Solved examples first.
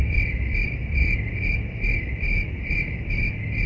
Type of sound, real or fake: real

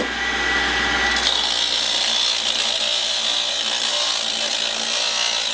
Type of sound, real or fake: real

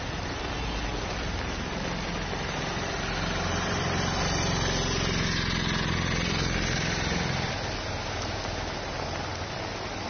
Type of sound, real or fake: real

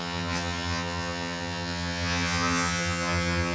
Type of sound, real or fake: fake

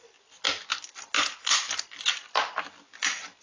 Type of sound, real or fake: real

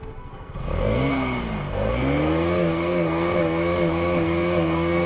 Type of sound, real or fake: fake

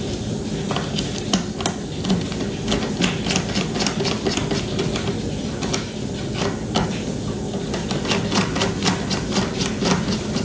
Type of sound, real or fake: real